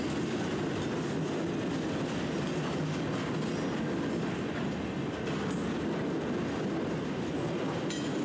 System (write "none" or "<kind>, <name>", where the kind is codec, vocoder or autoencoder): none